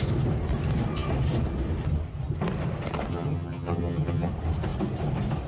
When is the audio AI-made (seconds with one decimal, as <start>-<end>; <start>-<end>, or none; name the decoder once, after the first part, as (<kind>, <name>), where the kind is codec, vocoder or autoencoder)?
3.1-4.3 (vocoder, HiFi-GAN)